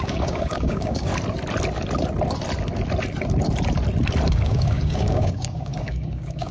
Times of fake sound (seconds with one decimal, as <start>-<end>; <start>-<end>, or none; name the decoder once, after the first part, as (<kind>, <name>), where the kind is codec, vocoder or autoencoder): 0.0-1.1 (codec, DAC); 4.3-6.5